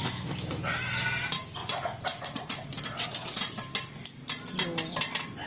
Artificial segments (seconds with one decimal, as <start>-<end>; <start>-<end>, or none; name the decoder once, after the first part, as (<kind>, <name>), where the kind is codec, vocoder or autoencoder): 1.6-2.8 (vocoder, Vocos)